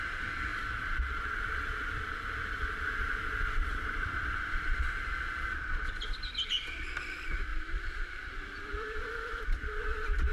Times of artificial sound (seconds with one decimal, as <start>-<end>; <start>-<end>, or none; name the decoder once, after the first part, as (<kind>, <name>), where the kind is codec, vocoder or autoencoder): 0.5-3.7 (vocoder, BigVGAN v2); 7.5-9.4